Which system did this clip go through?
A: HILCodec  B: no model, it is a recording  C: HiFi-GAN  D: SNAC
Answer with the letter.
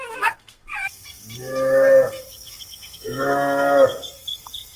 D